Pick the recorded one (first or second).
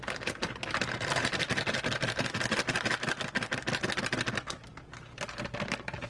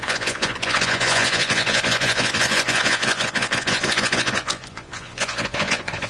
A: first